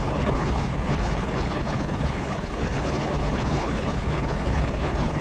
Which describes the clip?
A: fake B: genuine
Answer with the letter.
A